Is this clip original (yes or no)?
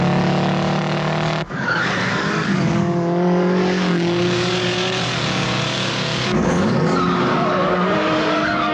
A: no